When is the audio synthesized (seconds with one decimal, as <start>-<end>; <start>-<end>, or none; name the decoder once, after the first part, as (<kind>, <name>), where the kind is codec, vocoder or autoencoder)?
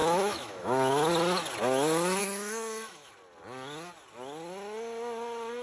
0.0-0.9 (autoencoder, DAC-VAE); 2.2-3.1